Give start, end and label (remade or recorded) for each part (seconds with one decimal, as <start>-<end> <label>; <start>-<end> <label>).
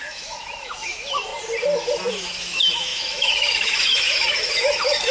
0.0-1.3 remade; 1.3-2.1 recorded; 2.1-5.1 remade